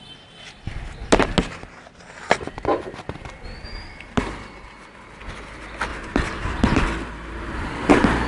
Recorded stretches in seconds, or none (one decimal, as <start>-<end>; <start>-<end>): 0.0-5.9; 7.9-8.3